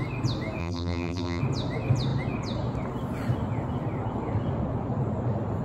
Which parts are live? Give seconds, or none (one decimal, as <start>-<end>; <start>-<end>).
0.0-0.6; 1.4-5.6